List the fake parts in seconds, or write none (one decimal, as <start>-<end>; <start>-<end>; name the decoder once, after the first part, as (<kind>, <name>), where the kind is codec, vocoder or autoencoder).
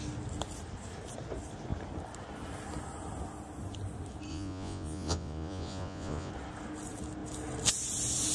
4.3-6.3 (vocoder, Vocos)